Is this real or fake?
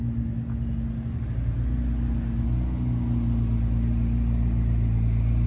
real